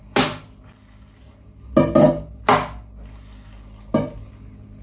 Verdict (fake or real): real